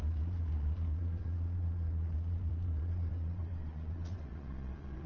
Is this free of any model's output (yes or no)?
no